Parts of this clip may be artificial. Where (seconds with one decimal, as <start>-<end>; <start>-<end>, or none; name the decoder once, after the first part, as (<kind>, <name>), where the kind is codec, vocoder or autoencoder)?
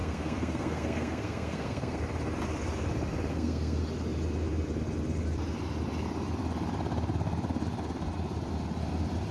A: 0.0-2.0 (codec, SNAC); 3.3-3.8